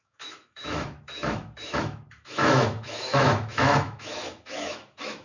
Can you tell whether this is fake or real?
fake